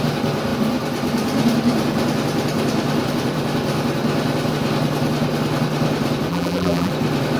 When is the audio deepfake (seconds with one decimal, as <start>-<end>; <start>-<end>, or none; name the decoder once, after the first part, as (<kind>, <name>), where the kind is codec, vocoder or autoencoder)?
6.3-6.9 (vocoder, BigVGAN v2)